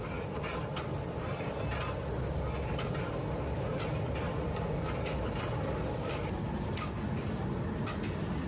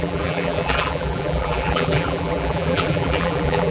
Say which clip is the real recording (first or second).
first